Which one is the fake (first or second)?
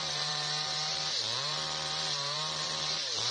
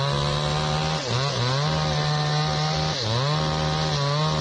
first